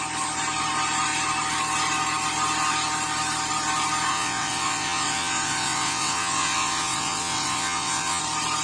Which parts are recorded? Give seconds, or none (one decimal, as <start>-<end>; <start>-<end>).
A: 0.0-4.1; 8.2-8.6